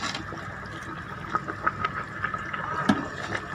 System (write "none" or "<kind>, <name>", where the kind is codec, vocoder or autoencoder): none